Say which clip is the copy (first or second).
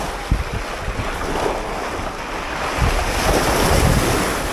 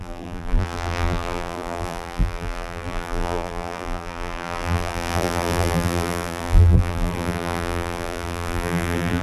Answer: second